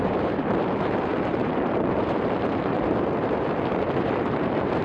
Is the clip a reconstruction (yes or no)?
yes